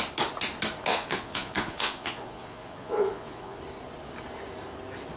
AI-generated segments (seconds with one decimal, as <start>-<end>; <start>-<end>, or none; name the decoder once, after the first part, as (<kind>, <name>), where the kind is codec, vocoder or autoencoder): 0.9-3.6 (vocoder, Vocos)